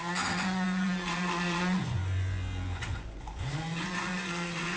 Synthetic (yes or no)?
yes